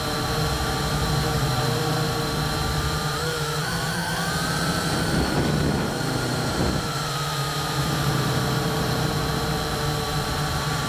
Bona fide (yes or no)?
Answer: no